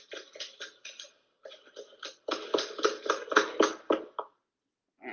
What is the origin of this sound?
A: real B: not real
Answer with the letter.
A